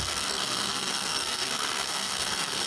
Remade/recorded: remade